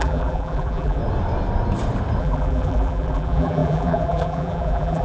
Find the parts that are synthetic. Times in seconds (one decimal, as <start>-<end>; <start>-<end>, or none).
0.0-1.0; 2.2-5.0

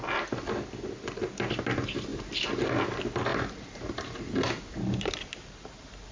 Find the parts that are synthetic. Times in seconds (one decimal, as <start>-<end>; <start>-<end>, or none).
3.3-4.6; 5.3-6.1

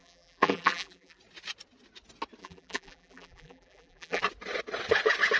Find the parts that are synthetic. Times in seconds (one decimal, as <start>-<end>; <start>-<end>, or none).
0.0-1.2; 2.4-4.2

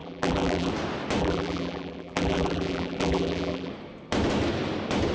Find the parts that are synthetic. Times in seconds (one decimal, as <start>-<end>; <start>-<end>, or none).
0.0-0.7; 1.2-3.7

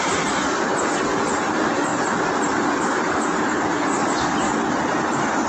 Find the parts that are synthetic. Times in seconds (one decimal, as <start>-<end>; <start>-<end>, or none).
0.0-0.7; 1.5-5.5

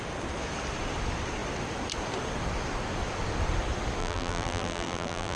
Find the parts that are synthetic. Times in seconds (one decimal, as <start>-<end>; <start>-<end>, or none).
4.0-5.4